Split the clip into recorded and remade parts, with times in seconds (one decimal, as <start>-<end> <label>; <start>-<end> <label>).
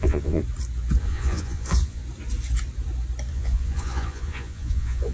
0.0-0.4 remade; 0.4-1.0 recorded; 1.0-2.0 remade; 2.0-3.3 recorded; 3.3-5.1 remade